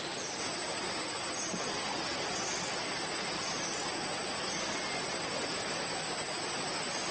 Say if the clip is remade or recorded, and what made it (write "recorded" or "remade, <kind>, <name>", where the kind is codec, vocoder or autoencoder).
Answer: recorded